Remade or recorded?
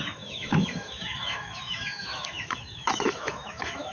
remade